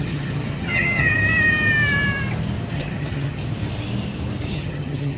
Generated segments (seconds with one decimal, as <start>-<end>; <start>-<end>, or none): 0.0-1.1; 2.7-3.4; 4.5-5.2